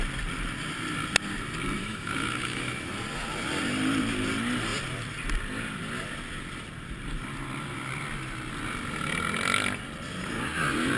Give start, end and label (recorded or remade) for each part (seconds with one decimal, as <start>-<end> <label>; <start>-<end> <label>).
0.0-1.8 recorded; 1.8-2.9 remade; 2.9-11.0 recorded